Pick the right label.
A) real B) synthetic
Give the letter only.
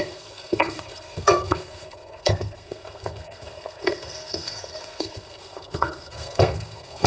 B